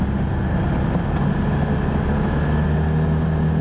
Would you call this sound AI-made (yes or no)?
no